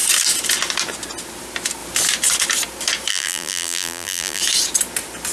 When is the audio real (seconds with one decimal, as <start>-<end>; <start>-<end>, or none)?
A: 0.0-3.1; 4.4-5.3